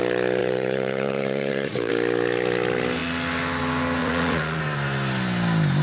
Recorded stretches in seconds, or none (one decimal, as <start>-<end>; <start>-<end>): 0.0-0.4; 1.9-4.0; 4.6-5.8